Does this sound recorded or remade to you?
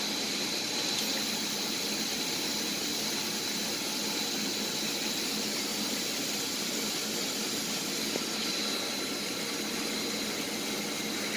recorded